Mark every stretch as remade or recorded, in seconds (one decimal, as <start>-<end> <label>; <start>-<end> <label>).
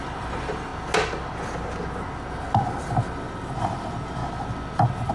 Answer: 0.0-0.7 remade; 0.7-2.8 recorded; 2.8-4.2 remade; 4.2-5.1 recorded